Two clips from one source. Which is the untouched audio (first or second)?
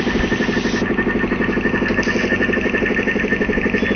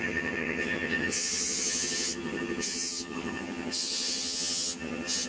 first